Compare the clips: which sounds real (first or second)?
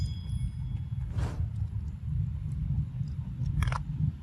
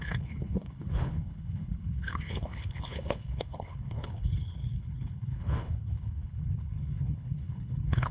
first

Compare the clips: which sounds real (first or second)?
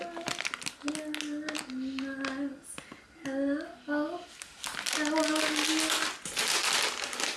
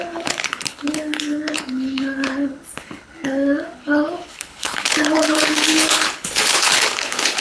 first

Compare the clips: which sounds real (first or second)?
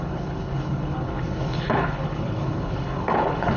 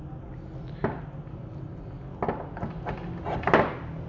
second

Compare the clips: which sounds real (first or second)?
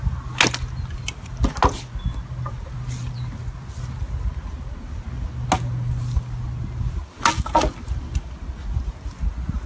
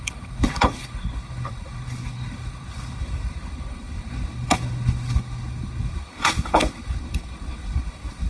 first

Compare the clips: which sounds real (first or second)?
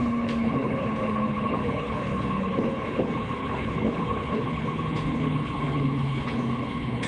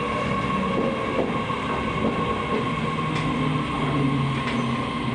second